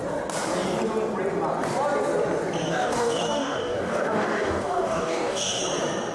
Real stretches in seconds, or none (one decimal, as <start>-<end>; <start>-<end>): 0.0-2.7; 5.6-6.1